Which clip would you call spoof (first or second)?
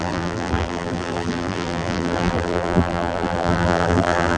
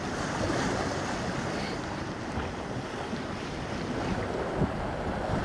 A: first